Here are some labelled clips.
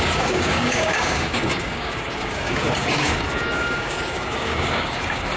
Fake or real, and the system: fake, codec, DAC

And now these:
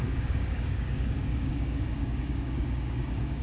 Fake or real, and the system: fake, codec, DAC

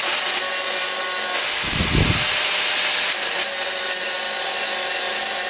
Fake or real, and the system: real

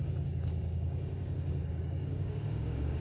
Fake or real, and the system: fake, codec, DAC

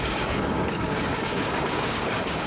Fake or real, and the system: fake, codec, DAC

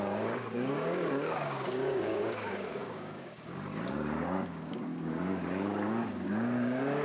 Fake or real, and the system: fake, codec, DAC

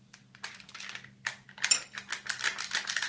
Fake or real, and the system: real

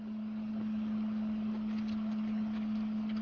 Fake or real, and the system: fake, codec, DAC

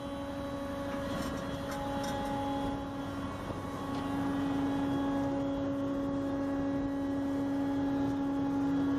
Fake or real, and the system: real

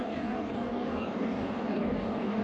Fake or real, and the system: fake, codec, DAC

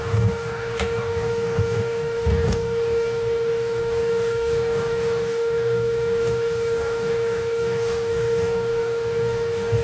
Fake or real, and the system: fake, codec, DAC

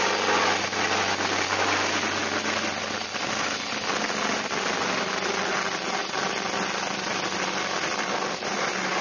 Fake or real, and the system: real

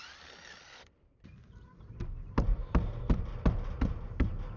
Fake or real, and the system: real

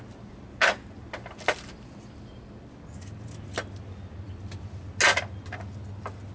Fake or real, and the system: real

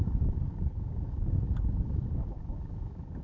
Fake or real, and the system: fake, codec, DAC